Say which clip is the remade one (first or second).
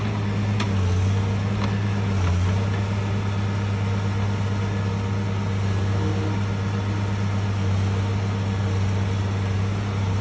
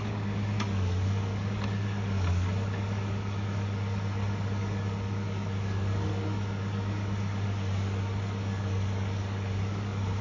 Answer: second